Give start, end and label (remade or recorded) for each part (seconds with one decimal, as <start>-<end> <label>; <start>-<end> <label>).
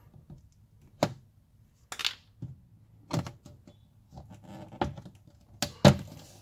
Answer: 0.0-6.4 recorded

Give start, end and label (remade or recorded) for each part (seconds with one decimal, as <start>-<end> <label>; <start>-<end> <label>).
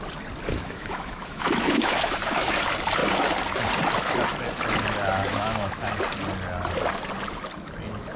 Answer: 0.0-0.5 recorded; 0.5-2.6 remade; 2.6-5.2 recorded; 5.2-5.9 remade; 5.9-8.2 recorded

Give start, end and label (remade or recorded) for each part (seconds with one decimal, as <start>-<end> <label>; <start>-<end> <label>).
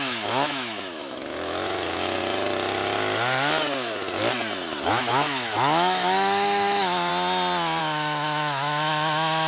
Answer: 0.0-2.2 remade; 2.2-4.9 recorded; 4.9-7.1 remade; 7.1-7.8 recorded; 7.8-9.5 remade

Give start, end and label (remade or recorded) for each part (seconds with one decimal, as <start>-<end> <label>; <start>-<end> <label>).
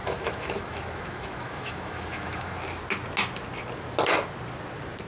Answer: 0.0-2.8 remade; 2.8-5.1 recorded